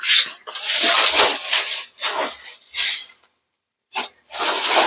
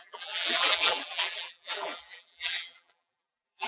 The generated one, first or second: second